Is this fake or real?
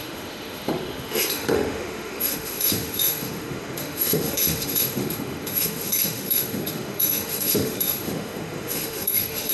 fake